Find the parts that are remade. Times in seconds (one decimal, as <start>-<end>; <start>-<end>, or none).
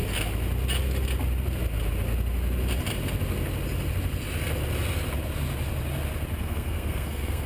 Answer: 6.4-7.5